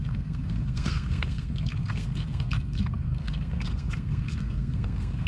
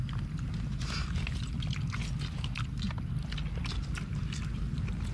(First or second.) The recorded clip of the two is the second